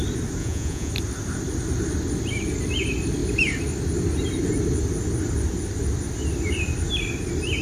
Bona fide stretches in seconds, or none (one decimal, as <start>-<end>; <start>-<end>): 0.0-0.4; 0.9-7.6